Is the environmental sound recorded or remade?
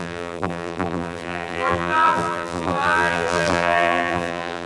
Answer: remade